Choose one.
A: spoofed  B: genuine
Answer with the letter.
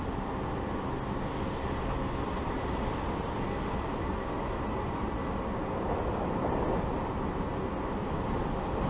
B